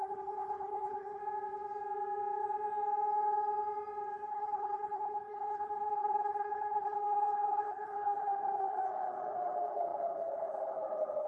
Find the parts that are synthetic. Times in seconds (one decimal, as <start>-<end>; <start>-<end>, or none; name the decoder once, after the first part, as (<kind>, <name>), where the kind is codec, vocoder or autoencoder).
0.0-1.2 (codec, HILCodec); 4.3-11.3